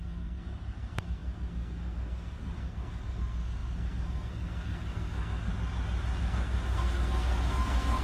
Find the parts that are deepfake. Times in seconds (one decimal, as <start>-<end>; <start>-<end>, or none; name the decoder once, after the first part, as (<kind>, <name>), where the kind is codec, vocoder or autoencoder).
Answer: 0.0-5.5 (codec, SNAC); 6.2-8.0